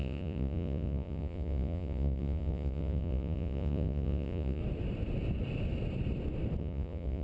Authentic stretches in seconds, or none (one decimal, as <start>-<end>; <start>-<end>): 4.6-6.6